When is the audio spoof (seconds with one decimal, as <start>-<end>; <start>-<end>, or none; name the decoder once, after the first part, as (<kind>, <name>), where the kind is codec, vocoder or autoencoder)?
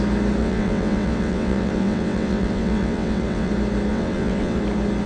0.4-3.5 (vocoder, WaveNeXt); 3.9-4.6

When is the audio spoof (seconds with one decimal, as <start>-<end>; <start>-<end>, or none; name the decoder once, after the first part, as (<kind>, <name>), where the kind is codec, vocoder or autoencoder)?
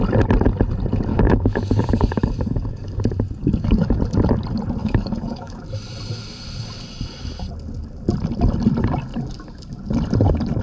1.1-3.0 (codec, DAC); 3.4-4.0; 4.8-5.6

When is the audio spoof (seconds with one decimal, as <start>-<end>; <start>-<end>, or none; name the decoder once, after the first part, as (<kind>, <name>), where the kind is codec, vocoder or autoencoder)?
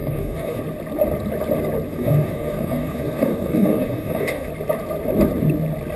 0.0-0.6 (codec, DAC); 1.9-4.5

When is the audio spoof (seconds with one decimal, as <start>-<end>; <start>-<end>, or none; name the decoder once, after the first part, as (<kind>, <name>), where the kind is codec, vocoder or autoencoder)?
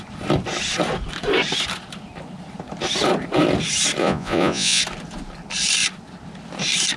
4.0-4.8 (vocoder, Vocos)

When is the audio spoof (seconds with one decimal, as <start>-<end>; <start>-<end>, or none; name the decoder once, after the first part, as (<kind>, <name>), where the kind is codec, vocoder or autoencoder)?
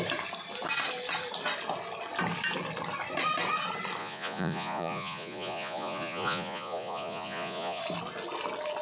4.0-7.8 (vocoder, Vocos)